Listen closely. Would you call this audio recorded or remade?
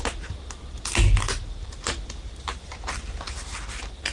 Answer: recorded